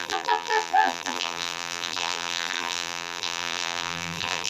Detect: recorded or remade remade